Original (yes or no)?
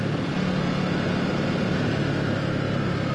yes